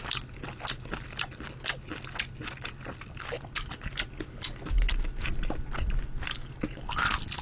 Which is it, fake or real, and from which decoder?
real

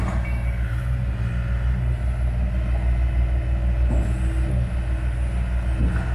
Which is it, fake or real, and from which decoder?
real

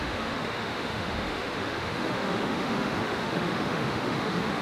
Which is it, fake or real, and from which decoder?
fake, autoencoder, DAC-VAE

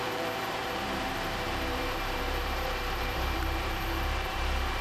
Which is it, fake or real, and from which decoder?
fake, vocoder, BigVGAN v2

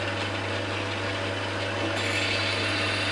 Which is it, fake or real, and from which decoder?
real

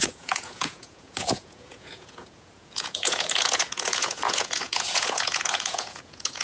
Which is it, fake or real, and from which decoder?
fake, vocoder, Vocos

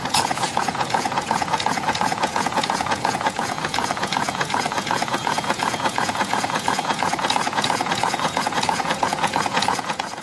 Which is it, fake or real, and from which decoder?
fake, vocoder, Vocos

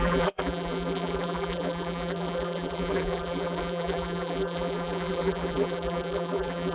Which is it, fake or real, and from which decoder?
fake, vocoder, BigVGAN v2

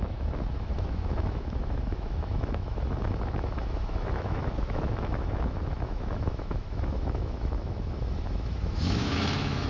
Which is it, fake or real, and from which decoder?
fake, autoencoder, DAC-VAE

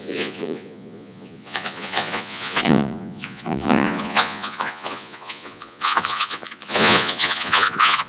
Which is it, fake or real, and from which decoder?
fake, vocoder, Vocos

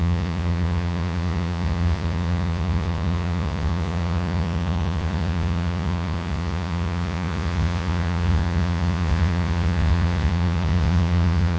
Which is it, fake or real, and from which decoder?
fake, vocoder, Vocos